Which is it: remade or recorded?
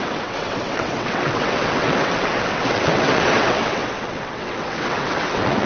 remade